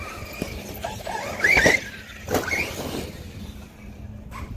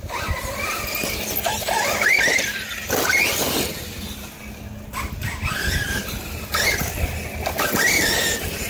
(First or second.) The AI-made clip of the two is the first